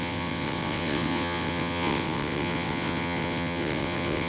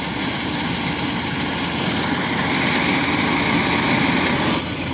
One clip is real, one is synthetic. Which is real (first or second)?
second